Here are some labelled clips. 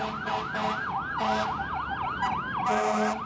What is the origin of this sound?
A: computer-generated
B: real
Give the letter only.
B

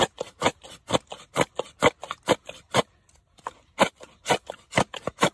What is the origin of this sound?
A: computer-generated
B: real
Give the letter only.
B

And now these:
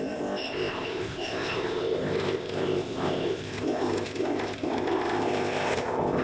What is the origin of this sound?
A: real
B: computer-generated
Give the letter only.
B